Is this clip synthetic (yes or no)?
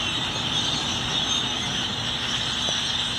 no